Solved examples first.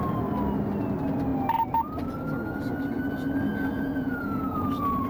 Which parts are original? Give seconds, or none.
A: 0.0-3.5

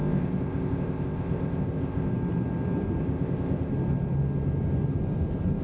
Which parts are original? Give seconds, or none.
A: 2.1-3.0; 3.7-5.6

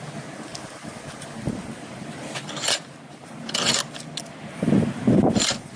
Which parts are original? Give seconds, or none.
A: 0.0-5.8

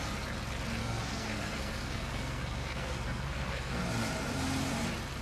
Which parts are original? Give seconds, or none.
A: 0.0-0.8; 3.8-5.2

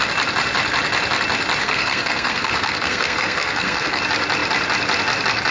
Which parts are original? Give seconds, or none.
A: 0.0-1.6; 4.0-5.5